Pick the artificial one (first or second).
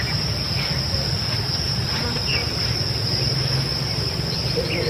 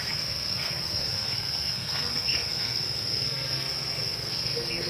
second